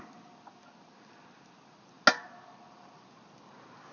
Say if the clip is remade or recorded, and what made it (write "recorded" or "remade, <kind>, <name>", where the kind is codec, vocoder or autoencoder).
recorded